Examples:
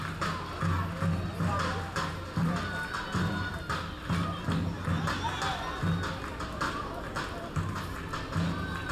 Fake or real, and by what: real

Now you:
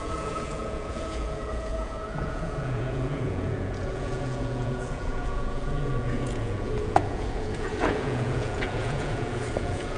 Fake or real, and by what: fake, vocoder, Vocos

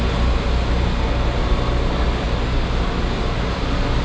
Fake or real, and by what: real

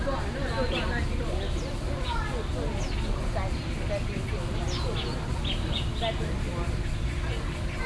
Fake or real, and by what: real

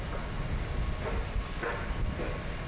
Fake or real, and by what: real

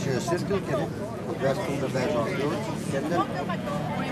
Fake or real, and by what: fake, vocoder, Vocos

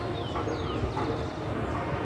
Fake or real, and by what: real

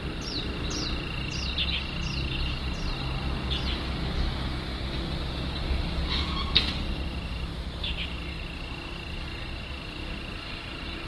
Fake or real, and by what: real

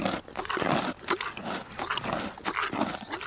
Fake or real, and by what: real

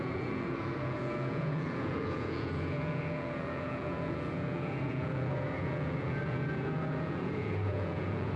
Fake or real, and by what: fake, vocoder, Vocos